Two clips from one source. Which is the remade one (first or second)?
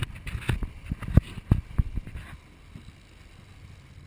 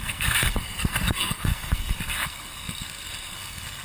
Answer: second